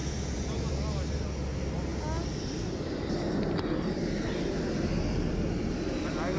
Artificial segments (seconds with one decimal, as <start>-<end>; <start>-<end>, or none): none